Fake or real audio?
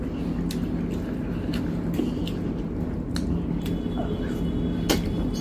real